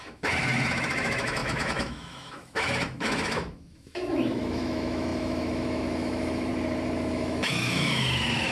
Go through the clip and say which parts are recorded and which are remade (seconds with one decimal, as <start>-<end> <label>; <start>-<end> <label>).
0.0-6.5 remade; 6.5-7.1 recorded; 7.1-8.5 remade